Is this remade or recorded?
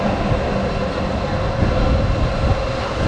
recorded